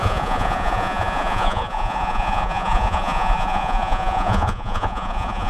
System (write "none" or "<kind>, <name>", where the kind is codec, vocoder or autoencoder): vocoder, Vocos